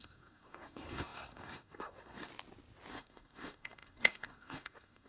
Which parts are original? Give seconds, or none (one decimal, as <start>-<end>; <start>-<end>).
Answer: 2.3-2.9